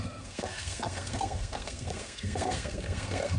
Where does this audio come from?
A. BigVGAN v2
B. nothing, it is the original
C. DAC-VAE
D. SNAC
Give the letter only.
D